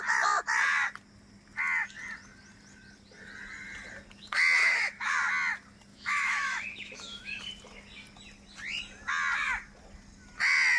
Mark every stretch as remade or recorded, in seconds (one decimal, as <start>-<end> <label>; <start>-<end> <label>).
0.0-4.6 recorded; 4.6-5.1 remade; 5.1-5.9 recorded; 5.9-7.4 remade; 7.4-10.8 recorded